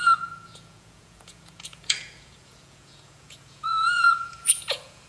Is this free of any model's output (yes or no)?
no